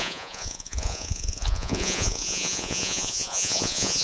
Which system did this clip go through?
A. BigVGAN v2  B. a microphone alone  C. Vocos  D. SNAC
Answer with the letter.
C